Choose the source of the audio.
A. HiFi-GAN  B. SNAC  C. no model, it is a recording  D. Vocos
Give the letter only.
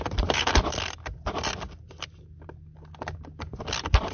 C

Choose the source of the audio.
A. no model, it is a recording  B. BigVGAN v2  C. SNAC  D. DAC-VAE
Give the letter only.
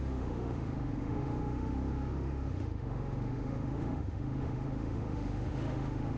D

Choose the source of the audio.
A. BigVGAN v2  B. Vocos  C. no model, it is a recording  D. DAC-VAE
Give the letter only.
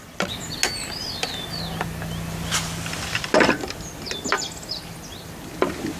C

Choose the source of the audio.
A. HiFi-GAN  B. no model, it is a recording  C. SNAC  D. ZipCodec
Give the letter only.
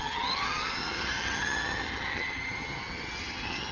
A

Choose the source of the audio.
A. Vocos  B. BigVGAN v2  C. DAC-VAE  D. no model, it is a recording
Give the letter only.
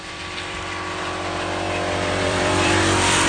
B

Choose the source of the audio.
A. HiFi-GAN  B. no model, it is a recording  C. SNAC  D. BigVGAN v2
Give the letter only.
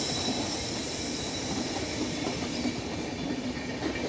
B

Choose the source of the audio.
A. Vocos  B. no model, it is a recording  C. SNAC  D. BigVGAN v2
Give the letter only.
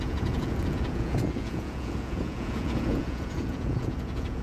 A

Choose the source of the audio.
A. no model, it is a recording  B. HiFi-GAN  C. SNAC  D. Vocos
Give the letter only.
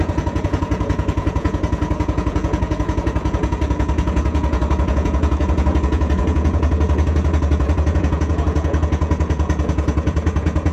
D